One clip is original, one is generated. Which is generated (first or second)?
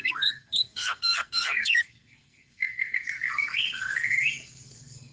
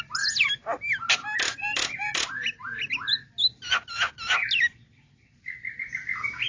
first